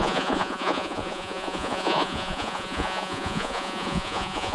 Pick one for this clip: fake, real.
fake